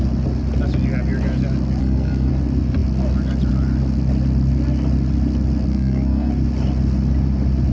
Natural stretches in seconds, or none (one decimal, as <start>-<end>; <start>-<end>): 0.0-1.8; 2.3-5.7; 6.3-7.7